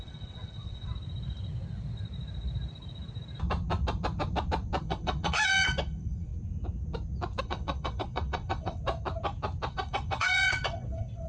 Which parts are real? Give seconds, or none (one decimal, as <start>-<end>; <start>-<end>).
0.9-4.8; 6.3-7.4; 8.8-9.7